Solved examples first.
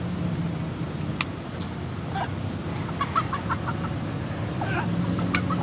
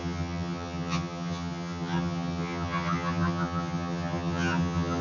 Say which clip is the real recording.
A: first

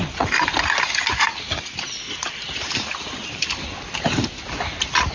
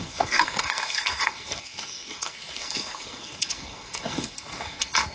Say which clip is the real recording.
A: first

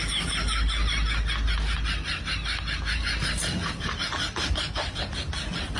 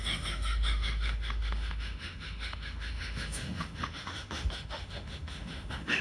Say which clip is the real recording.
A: first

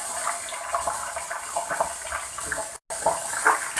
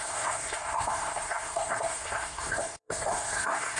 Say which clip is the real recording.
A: first